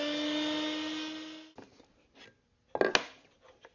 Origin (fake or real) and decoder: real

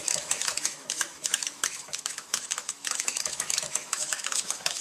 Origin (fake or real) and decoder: fake, autoencoder, DAC-VAE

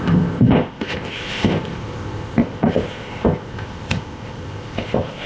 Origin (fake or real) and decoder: fake, codec, ZipCodec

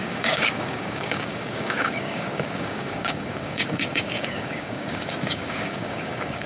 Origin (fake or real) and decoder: fake, codec, DAC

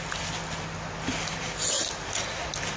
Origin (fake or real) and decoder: real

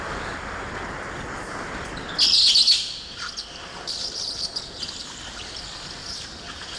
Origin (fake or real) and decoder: real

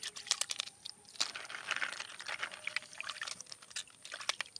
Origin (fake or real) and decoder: real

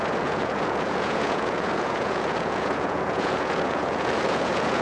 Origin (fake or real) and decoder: fake, vocoder, Vocos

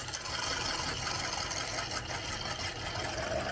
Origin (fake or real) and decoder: real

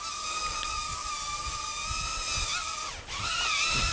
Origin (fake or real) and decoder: real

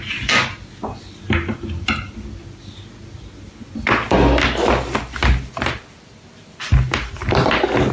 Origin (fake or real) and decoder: real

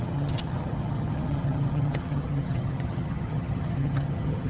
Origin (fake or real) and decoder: fake, vocoder, HiFi-GAN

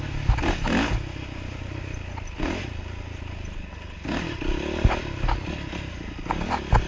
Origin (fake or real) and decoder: real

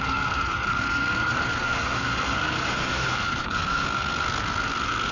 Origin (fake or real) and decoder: fake, codec, SNAC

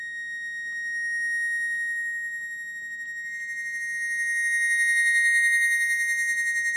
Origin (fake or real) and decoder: real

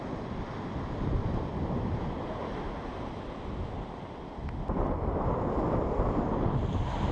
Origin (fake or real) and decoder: real